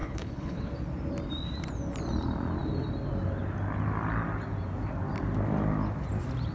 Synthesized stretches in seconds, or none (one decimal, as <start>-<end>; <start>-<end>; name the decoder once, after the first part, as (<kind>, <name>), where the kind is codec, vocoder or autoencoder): 0.0-0.7 (codec, HILCodec)

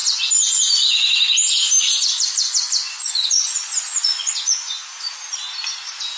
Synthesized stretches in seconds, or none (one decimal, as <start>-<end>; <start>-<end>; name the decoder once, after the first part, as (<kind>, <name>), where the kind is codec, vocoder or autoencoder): 1.9-4.9 (vocoder, Vocos)